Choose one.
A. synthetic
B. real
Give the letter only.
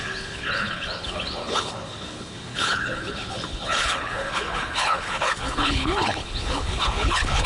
A